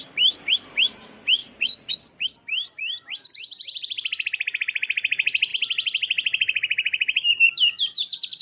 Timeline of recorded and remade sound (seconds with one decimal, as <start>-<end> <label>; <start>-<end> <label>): 0.0-1.4 recorded; 1.4-1.9 remade; 1.9-8.4 recorded

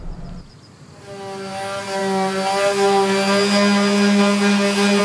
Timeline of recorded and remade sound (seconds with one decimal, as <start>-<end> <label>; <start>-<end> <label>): 0.0-5.0 recorded

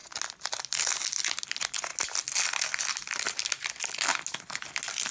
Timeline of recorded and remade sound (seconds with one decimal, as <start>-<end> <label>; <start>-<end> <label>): 0.0-5.1 recorded

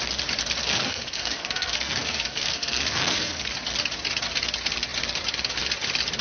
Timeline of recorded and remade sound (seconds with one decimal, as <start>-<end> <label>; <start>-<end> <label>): 0.0-0.6 recorded; 0.6-3.5 remade; 3.5-6.2 recorded

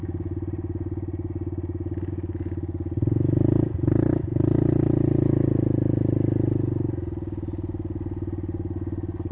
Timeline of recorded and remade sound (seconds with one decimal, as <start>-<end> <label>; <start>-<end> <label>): 0.0-9.3 recorded

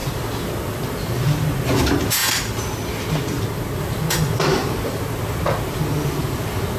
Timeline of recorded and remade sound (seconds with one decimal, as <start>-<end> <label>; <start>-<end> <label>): 0.0-6.8 recorded